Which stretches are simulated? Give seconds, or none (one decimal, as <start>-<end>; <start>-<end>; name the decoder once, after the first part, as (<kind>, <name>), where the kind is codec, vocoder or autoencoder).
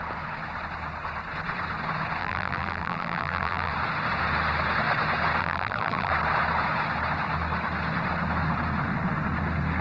2.2-3.7 (vocoder, BigVGAN v2); 5.4-6.1